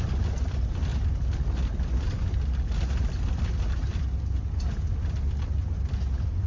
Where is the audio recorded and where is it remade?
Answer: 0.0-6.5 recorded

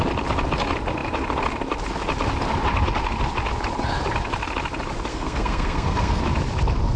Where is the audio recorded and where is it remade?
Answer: 0.0-5.1 recorded; 5.1-6.2 remade; 6.2-7.0 recorded

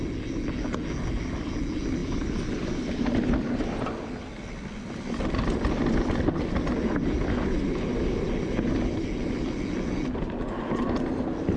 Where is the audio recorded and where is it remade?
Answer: 0.0-11.6 recorded

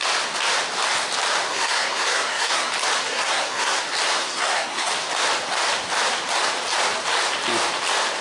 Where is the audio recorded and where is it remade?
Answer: 0.0-1.5 recorded; 1.5-2.7 remade; 2.7-3.1 recorded; 3.1-3.8 remade; 3.8-4.2 recorded; 4.2-4.9 remade; 4.9-8.2 recorded

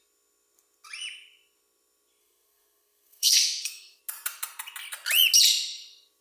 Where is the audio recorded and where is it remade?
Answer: 0.0-2.2 recorded; 2.2-4.0 remade; 4.0-6.2 recorded